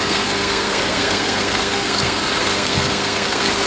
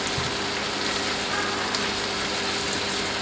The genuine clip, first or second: second